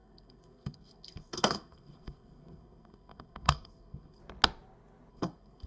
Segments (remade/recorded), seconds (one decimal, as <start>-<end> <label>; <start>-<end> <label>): 0.0-4.2 remade; 4.2-5.1 recorded; 5.1-5.7 remade